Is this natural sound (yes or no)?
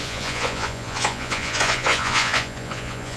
no